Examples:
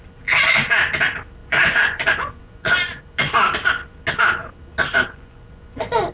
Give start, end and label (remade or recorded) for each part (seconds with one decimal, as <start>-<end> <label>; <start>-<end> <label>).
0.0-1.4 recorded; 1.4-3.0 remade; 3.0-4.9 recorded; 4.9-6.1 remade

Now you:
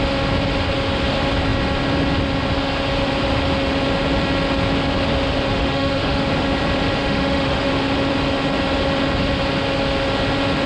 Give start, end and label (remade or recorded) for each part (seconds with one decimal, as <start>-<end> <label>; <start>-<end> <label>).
0.0-5.5 recorded; 5.5-6.2 remade; 6.2-7.0 recorded; 7.0-7.7 remade; 7.7-10.7 recorded

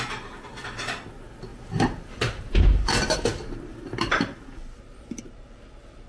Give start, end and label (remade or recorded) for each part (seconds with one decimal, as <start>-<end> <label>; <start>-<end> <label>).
0.0-1.5 recorded; 1.5-5.2 remade; 5.2-6.1 recorded